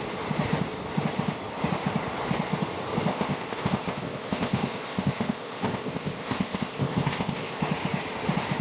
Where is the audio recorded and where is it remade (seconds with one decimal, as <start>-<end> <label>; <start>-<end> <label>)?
0.0-3.1 recorded; 3.1-7.6 remade; 7.6-8.6 recorded